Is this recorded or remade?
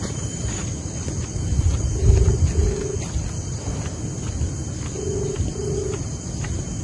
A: recorded